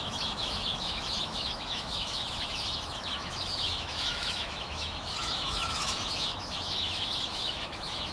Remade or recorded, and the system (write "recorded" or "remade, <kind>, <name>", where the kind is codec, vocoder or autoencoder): remade, autoencoder, DAC-VAE